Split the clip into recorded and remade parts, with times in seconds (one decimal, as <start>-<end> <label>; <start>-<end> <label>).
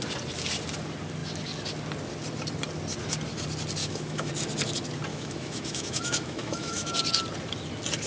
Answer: 0.0-3.8 recorded; 3.8-4.3 remade; 4.3-5.1 recorded; 5.1-6.9 remade; 6.9-8.1 recorded